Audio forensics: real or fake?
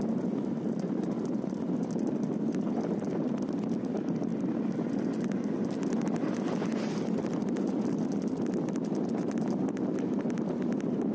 real